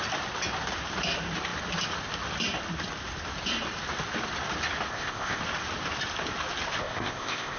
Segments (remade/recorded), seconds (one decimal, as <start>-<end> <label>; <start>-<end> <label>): 0.0-4.9 recorded; 4.9-5.4 remade; 5.4-6.8 recorded; 6.8-7.6 remade